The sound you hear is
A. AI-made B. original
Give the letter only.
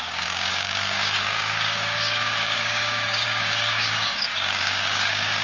A